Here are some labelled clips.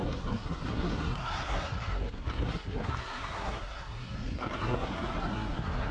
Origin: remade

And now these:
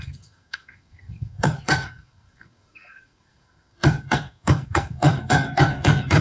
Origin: remade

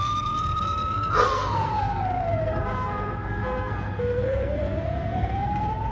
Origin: remade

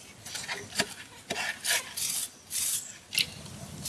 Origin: recorded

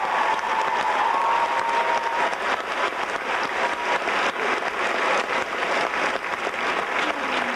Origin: recorded